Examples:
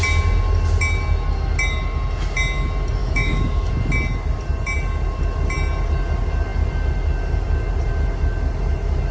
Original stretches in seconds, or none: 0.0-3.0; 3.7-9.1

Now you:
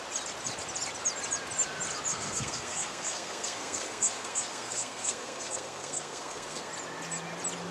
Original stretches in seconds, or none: 0.0-2.1; 6.7-7.7